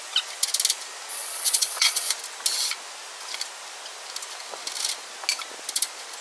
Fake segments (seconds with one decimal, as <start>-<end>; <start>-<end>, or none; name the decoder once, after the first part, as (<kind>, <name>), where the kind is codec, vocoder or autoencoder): 1.1-2.1 (vocoder, Vocos)

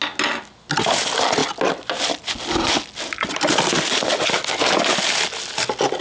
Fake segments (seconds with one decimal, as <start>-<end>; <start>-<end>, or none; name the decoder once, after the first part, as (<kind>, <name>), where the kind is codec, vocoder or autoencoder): none